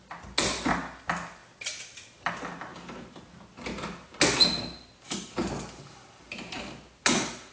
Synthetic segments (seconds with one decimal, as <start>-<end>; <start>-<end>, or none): none